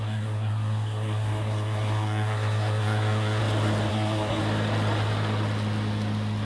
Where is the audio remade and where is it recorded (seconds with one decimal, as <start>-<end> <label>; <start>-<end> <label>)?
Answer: 0.0-3.4 remade; 3.4-3.9 recorded; 3.9-4.4 remade; 4.4-6.5 recorded